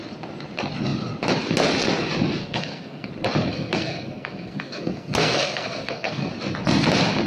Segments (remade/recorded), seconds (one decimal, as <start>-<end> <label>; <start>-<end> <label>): 0.0-2.4 recorded; 2.4-3.1 remade; 3.1-3.5 recorded; 3.5-6.3 remade; 6.3-7.3 recorded